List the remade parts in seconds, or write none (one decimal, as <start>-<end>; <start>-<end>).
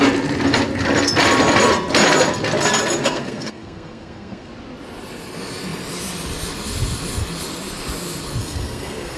3.0-4.5; 8.4-9.2